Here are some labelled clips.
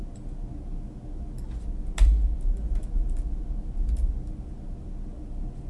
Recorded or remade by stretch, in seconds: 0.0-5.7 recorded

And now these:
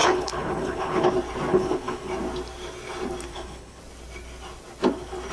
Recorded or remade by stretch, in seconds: 0.0-1.1 remade; 1.1-1.5 recorded; 1.5-2.1 remade; 2.1-3.3 recorded; 3.3-3.8 remade; 3.8-5.3 recorded